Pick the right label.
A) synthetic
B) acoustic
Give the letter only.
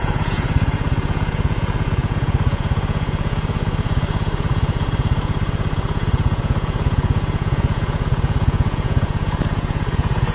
A